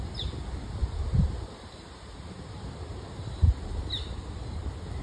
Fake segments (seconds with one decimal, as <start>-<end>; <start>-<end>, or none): 0.8-3.8